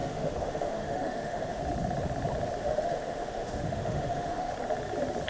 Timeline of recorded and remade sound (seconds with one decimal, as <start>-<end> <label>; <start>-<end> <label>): 0.0-1.6 remade; 1.6-2.6 recorded; 2.6-4.5 remade; 4.5-5.3 recorded